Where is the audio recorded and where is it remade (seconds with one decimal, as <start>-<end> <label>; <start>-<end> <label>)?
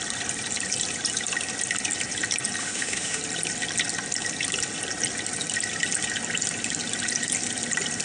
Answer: 0.0-2.6 recorded; 2.6-3.2 remade; 3.2-8.0 recorded